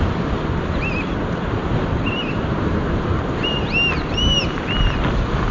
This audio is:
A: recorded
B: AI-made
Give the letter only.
A